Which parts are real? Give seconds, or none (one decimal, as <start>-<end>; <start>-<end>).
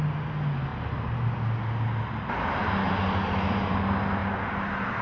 0.0-5.0